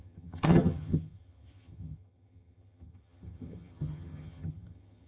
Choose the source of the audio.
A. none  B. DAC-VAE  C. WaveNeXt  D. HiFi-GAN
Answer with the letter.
D